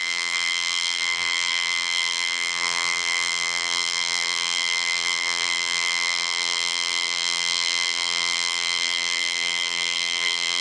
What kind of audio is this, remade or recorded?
remade